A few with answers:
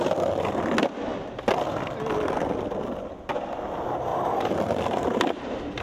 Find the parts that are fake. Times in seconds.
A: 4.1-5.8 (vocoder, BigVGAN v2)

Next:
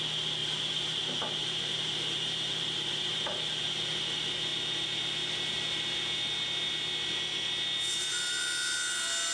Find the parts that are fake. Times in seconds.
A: 0.4-1.0 (vocoder, BigVGAN v2); 1.4-3.6